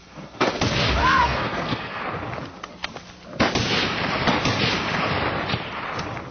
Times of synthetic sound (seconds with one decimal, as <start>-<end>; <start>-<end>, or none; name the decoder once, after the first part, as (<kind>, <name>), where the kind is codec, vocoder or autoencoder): 0.0-0.5 (codec, SNAC); 1.0-2.0